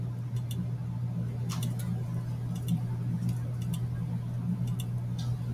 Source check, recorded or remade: recorded